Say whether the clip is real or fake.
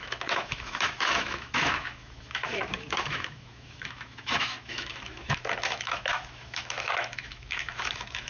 fake